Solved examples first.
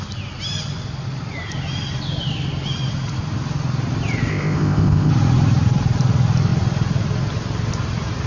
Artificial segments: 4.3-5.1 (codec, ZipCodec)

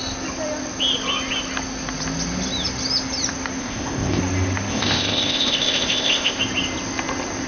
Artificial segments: 3.6-4.2 (codec, ZipCodec); 4.7-6.4